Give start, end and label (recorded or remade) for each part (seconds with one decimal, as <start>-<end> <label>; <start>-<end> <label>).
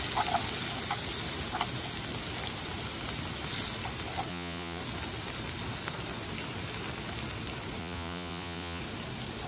0.0-4.3 recorded; 4.3-4.8 remade; 4.8-7.8 recorded; 7.8-8.8 remade; 8.8-9.5 recorded